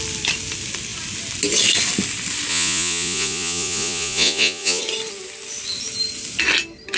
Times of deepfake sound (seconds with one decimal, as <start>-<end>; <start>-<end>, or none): 2.5-4.8